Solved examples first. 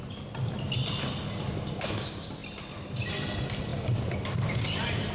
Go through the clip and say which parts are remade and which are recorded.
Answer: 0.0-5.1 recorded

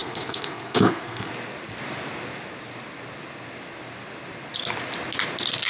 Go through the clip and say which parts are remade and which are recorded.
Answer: 0.0-1.3 remade; 1.3-5.7 recorded

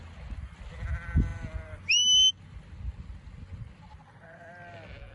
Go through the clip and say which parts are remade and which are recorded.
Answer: 0.0-5.1 recorded

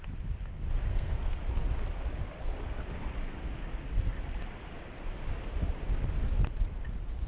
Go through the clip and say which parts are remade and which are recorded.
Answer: 0.0-0.9 recorded; 0.9-1.4 remade; 1.4-7.3 recorded

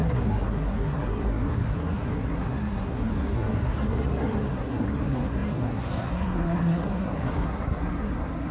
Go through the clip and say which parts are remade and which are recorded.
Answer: 0.0-8.5 remade